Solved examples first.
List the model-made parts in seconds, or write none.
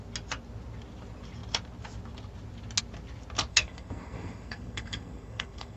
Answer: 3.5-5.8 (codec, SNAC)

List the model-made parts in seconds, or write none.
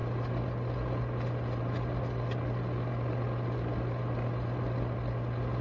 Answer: none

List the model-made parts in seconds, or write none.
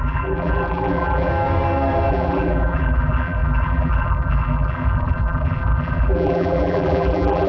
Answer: 0.0-1.3 (vocoder, BigVGAN v2); 2.1-7.5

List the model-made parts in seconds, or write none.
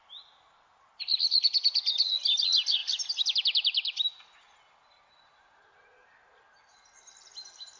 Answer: none